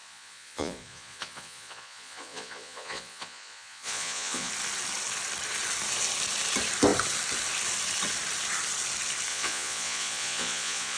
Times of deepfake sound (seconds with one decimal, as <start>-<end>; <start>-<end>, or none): 0.0-4.5; 9.3-11.0